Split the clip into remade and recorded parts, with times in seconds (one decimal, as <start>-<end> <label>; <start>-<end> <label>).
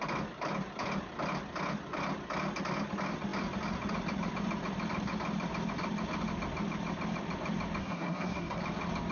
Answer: 0.0-7.8 recorded; 7.8-8.6 remade; 8.6-9.1 recorded